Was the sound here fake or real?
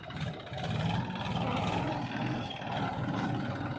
real